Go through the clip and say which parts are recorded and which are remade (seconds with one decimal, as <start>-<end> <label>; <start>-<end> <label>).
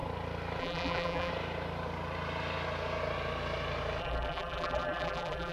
0.0-0.6 recorded; 0.6-1.3 remade; 1.3-4.0 recorded; 4.0-5.5 remade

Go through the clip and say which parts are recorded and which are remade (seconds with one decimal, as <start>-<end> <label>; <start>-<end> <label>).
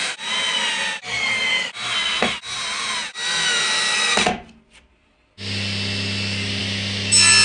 0.0-1.0 recorded; 1.0-1.7 remade; 1.7-7.4 recorded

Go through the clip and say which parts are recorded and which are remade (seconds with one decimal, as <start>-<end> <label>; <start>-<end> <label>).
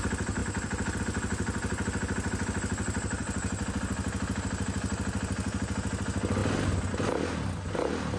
0.0-8.2 recorded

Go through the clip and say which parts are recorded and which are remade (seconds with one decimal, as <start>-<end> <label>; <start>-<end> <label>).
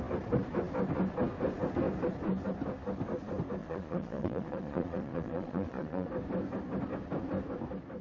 0.0-3.6 recorded; 3.6-6.1 remade; 6.1-8.0 recorded